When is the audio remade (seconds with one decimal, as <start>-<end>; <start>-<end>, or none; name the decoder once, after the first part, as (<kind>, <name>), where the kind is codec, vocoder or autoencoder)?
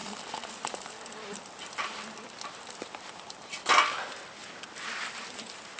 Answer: none